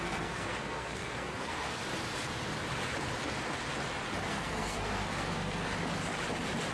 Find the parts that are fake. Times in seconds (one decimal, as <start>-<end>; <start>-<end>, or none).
0.0-1.8; 4.2-5.7

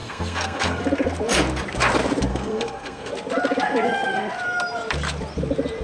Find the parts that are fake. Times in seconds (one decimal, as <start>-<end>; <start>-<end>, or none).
0.0-0.8; 2.3-3.1

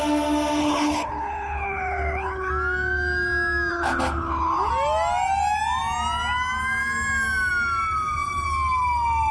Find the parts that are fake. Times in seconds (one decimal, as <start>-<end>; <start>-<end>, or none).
0.6-2.5; 3.7-4.7

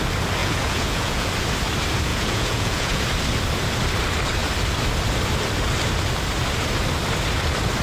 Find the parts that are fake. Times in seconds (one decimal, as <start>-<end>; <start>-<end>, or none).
0.4-1.3; 2.1-3.0